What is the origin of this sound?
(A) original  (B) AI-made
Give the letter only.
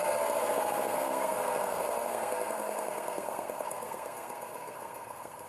B